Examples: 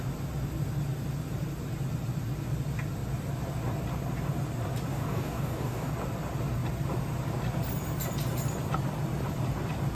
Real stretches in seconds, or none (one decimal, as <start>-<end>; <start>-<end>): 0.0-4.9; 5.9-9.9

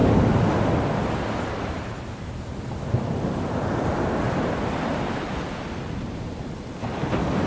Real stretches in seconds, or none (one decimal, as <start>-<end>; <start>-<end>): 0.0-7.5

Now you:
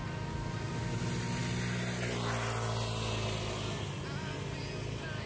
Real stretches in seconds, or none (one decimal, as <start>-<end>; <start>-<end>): 0.0-5.3